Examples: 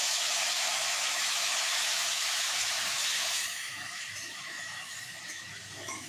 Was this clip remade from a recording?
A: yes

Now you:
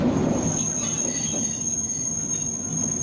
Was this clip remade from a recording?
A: no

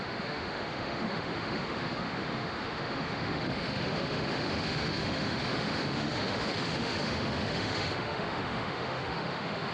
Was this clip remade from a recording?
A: yes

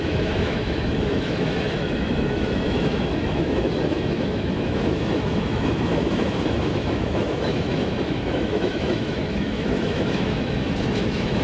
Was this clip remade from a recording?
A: yes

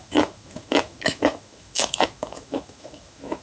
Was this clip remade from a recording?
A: yes